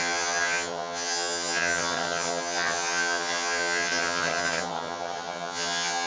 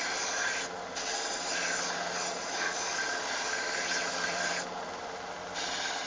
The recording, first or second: second